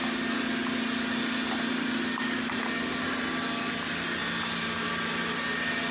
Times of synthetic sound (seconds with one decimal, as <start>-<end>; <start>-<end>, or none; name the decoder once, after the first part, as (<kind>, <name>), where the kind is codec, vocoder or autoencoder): none